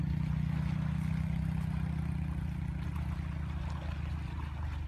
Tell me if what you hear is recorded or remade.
recorded